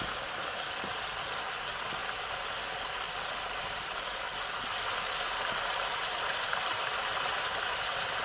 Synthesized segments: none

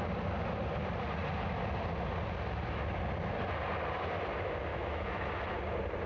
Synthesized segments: 4.7-5.3 (autoencoder, DAC-VAE)